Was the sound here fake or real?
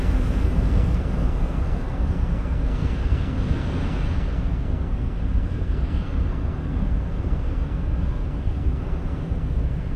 fake